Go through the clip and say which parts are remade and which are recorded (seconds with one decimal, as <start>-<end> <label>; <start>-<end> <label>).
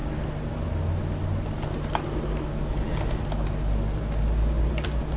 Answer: 0.0-5.2 recorded